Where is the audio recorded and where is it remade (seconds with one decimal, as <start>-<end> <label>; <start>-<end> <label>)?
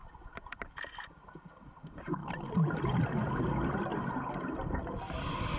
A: 0.0-1.3 remade; 1.3-2.2 recorded; 2.2-2.8 remade; 2.8-5.6 recorded